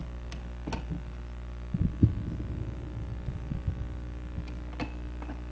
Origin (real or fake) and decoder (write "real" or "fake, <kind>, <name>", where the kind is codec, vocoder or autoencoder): real